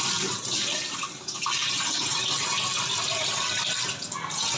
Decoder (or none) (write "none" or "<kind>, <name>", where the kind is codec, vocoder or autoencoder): none